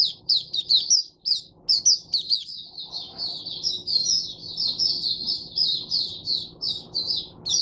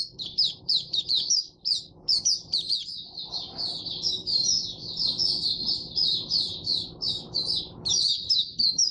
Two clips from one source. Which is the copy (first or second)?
second